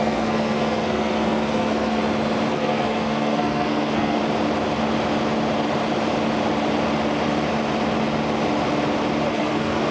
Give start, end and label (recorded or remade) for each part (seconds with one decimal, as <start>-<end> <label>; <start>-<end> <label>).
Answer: 0.0-2.0 remade; 2.0-2.5 recorded; 2.5-4.2 remade; 4.2-9.3 recorded; 9.3-9.9 remade